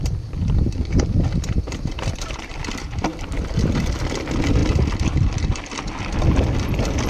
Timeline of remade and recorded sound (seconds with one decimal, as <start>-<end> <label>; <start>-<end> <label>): 0.0-2.5 recorded; 2.5-3.6 remade; 3.6-7.1 recorded